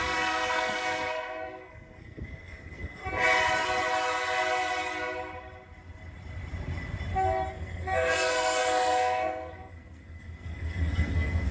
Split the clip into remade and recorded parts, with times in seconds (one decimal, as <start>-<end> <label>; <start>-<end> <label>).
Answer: 0.0-3.0 remade; 3.0-7.5 recorded; 7.5-11.5 remade